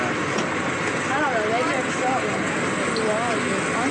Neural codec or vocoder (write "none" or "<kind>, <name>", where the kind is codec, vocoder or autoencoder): none